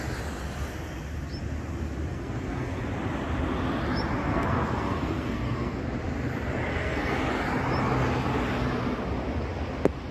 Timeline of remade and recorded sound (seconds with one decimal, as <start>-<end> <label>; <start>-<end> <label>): 0.0-2.1 recorded; 2.1-2.8 remade; 2.8-4.2 recorded; 4.2-5.8 remade; 5.8-6.7 recorded; 6.7-7.2 remade; 7.2-10.1 recorded